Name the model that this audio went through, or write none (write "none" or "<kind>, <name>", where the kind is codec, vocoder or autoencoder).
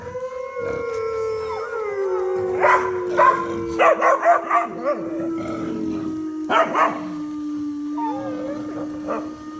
none